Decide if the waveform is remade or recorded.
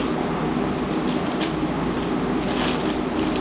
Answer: recorded